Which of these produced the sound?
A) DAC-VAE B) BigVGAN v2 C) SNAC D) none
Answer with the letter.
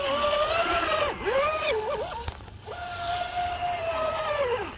D